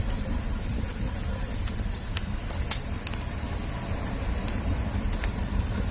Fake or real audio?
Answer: fake